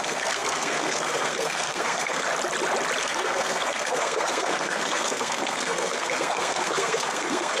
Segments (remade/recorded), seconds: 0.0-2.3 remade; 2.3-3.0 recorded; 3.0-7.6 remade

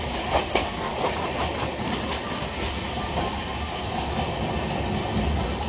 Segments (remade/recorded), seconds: 0.0-0.4 recorded; 0.4-0.9 remade; 0.9-5.7 recorded

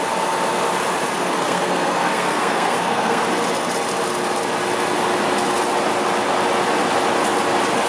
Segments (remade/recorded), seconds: 0.0-1.1 recorded; 1.1-3.2 remade; 3.2-7.9 recorded

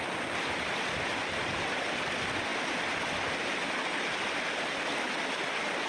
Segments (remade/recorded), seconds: 0.0-5.9 recorded

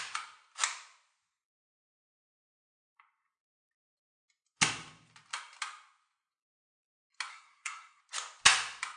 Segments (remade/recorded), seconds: 0.0-7.3 recorded; 7.3-8.0 remade; 8.0-9.0 recorded

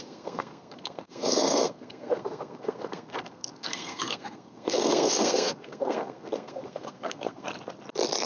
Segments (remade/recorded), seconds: 0.0-7.5 remade; 7.5-8.3 recorded